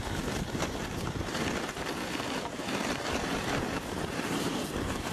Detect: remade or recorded recorded